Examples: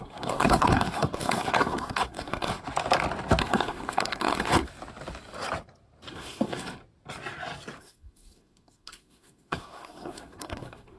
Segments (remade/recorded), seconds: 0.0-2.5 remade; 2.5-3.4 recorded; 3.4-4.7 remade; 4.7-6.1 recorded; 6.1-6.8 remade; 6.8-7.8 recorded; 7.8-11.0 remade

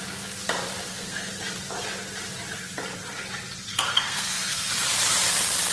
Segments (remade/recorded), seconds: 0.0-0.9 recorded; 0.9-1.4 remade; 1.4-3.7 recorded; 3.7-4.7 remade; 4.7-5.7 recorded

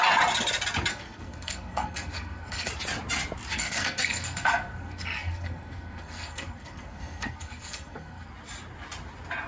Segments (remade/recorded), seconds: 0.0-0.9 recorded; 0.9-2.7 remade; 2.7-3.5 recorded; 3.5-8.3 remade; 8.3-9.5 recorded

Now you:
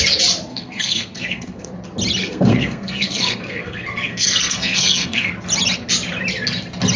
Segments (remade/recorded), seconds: 0.0-0.5 recorded; 0.5-1.7 remade; 1.7-2.2 recorded; 2.2-5.3 remade; 5.3-7.0 recorded